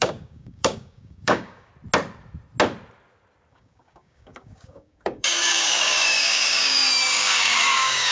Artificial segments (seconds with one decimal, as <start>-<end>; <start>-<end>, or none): 0.0-1.7; 3.5-8.1